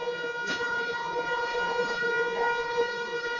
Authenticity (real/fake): fake